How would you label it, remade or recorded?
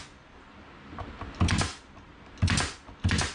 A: recorded